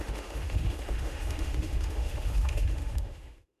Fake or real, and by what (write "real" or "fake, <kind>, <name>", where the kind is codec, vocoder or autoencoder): fake, autoencoder, DAC-VAE